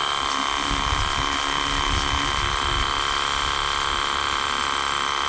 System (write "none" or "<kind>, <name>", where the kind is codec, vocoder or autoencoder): none